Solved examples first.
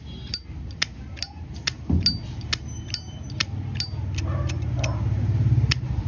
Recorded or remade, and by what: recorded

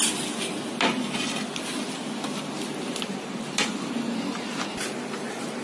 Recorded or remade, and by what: recorded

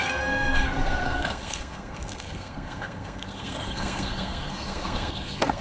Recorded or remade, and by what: remade, codec, SNAC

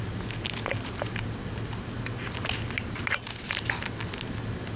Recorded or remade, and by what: recorded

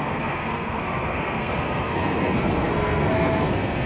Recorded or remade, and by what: remade, codec, SNAC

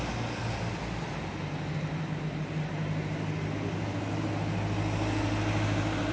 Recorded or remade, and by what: recorded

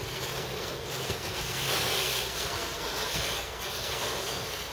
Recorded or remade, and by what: remade, codec, SNAC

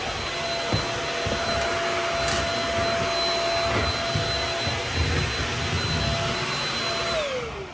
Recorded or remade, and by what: recorded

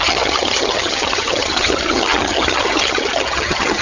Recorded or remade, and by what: remade, vocoder, HiFi-GAN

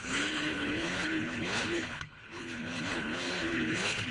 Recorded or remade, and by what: remade, codec, HILCodec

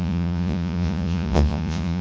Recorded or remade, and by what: remade, vocoder, Vocos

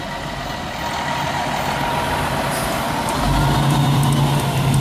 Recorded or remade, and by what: recorded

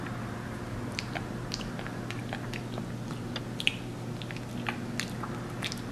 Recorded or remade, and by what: recorded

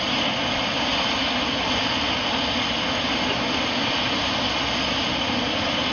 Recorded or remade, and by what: recorded